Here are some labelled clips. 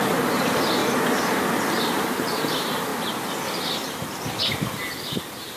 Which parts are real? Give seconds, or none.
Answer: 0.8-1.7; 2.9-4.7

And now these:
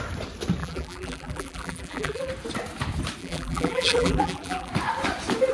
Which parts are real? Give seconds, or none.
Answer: 0.0-0.6; 2.3-3.2; 4.7-5.5

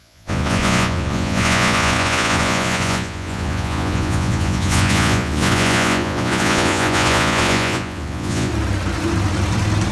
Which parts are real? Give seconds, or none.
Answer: 8.5-9.9

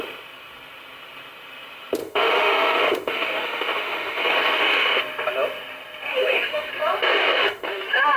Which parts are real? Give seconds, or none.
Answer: 0.0-2.0; 5.0-6.1; 6.7-7.2

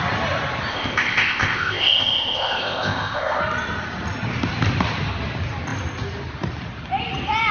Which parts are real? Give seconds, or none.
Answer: 0.0-0.7; 3.4-7.5

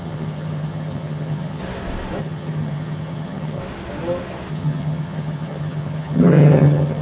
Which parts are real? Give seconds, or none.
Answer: 1.6-2.2; 3.6-4.5